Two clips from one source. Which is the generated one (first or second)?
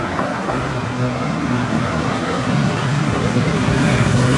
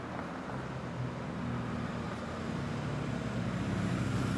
first